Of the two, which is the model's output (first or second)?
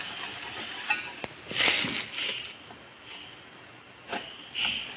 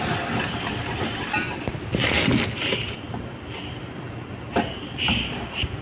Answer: second